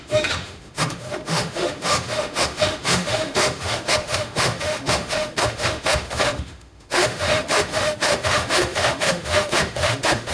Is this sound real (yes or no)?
no